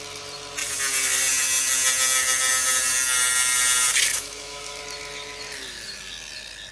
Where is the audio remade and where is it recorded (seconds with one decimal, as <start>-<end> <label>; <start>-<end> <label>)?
0.0-4.1 recorded; 4.1-4.8 remade; 4.8-6.7 recorded